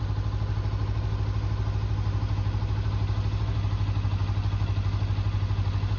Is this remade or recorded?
recorded